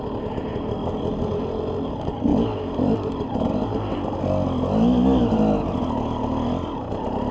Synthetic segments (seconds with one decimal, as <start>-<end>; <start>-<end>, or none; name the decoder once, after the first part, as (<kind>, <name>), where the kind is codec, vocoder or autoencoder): none